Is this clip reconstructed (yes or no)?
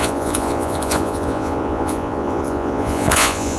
yes